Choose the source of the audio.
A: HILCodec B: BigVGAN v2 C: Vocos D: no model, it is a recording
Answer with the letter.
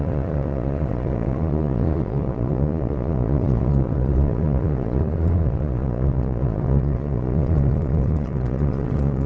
C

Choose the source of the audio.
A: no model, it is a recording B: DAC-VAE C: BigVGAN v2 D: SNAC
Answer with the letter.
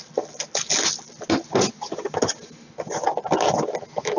A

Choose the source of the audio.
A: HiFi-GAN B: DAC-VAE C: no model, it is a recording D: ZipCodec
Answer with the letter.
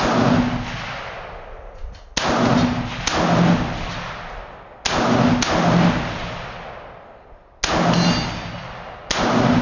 C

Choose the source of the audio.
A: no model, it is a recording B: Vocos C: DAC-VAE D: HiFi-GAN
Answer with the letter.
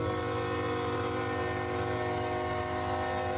A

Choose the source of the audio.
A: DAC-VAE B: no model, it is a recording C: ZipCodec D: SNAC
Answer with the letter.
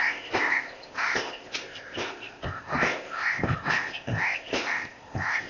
C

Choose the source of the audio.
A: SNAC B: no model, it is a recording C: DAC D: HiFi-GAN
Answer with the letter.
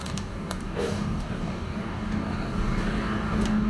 C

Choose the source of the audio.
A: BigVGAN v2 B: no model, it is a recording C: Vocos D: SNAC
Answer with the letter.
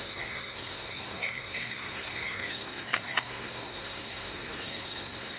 D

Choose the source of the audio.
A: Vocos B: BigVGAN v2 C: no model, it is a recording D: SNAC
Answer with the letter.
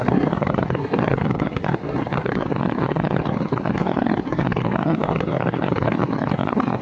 D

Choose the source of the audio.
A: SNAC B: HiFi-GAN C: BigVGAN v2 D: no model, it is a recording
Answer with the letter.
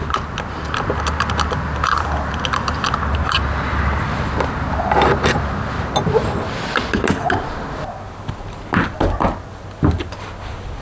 D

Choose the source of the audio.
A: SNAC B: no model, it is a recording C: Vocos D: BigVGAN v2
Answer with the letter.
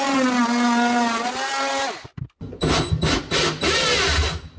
B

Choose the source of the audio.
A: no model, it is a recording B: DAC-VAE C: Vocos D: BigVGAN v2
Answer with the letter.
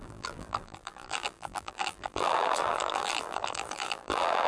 D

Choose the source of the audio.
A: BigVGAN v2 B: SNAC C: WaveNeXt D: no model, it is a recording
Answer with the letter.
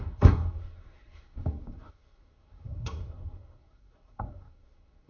B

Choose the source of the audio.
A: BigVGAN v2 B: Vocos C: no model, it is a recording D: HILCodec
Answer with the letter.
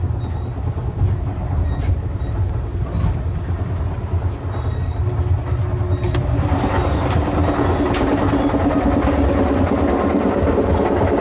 C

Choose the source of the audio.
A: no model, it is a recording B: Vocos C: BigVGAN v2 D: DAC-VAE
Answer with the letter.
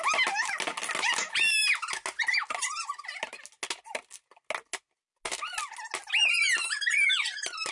A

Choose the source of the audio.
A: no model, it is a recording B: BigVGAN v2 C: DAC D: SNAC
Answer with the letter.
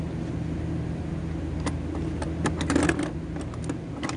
A